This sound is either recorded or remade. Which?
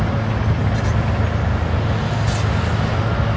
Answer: recorded